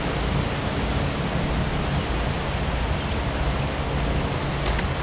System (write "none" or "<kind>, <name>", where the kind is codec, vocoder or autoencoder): none